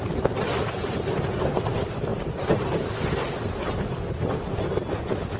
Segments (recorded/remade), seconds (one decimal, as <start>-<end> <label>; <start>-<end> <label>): 0.0-5.4 recorded